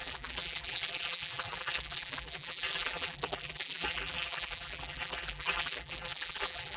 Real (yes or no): no